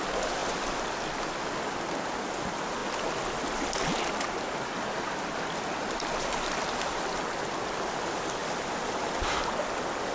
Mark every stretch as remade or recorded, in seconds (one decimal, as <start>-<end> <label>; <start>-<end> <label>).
0.0-10.1 recorded